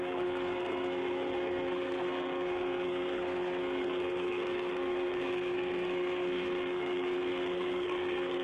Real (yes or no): no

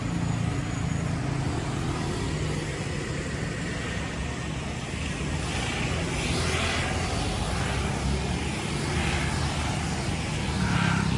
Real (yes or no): yes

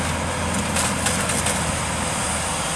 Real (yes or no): yes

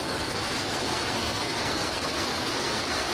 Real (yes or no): no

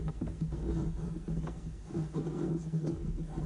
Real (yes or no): no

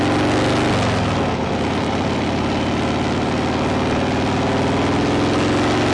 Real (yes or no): yes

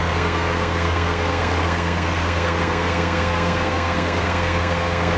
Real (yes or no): no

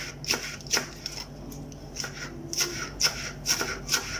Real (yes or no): yes